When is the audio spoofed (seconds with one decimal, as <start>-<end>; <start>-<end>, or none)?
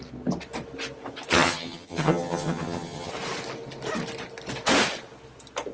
1.3-3.1